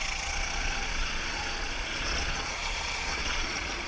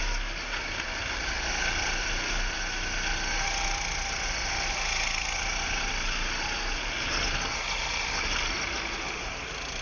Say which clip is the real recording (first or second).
second